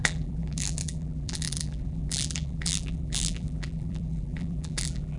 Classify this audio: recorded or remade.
remade